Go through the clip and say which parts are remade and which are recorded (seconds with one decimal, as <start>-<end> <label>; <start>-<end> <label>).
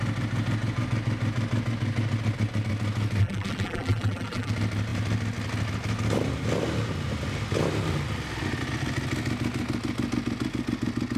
0.0-3.2 recorded; 3.2-4.5 remade; 4.5-11.2 recorded